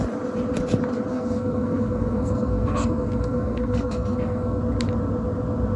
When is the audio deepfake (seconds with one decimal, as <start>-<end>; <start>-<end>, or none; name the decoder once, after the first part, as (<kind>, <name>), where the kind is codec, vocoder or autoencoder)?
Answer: 1.1-4.6 (codec, SNAC)